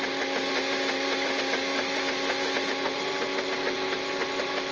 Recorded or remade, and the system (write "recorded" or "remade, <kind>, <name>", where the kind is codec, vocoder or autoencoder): recorded